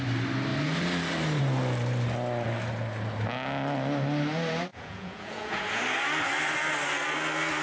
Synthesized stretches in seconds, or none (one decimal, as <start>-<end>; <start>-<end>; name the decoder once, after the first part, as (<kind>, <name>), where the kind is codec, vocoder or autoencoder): 4.7-5.8 (vocoder, Vocos)

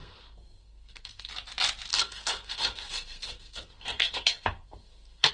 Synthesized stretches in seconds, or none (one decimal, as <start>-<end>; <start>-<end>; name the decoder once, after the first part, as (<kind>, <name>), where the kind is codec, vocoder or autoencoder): 0.0-1.3 (codec, SNAC); 1.9-5.3

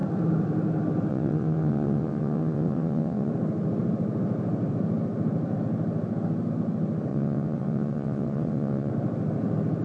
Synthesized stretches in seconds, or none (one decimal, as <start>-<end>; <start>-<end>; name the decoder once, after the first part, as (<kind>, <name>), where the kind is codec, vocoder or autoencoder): 1.1-3.3 (vocoder, WaveNeXt); 7.1-8.9

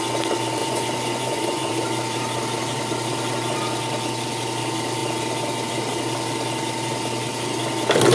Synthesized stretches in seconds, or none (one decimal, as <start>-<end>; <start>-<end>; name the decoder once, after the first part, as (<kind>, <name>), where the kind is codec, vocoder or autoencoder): 0.6-1.7 (vocoder, Vocos)

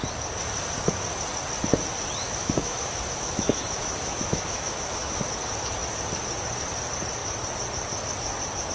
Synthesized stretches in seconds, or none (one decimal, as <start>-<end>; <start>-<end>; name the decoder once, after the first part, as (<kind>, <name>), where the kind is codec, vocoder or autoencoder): 2.2-5.2 (autoencoder, DAC-VAE)

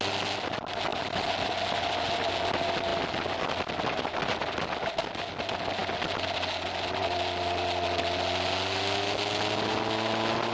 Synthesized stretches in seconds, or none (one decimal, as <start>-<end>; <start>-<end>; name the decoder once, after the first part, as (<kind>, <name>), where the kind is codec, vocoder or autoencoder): none

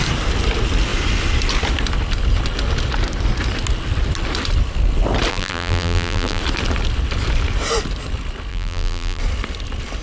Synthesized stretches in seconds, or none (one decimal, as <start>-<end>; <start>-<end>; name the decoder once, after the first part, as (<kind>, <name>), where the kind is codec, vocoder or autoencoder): 5.3-6.4 (vocoder, BigVGAN v2); 8.5-9.2